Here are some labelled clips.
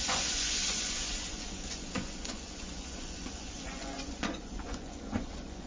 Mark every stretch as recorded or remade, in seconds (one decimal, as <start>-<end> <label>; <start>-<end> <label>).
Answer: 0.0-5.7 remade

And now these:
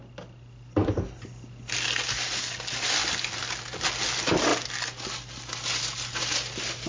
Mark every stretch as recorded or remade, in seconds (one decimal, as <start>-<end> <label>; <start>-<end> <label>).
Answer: 0.0-6.9 recorded

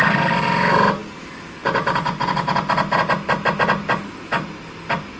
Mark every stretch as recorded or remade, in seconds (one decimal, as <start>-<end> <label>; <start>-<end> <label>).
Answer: 0.0-5.2 recorded

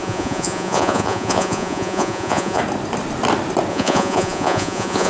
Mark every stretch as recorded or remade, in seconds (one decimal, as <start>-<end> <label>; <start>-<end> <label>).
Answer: 0.0-2.6 remade; 2.6-3.7 recorded; 3.7-5.1 remade